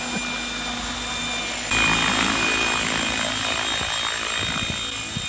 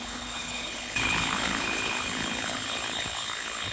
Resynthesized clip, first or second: second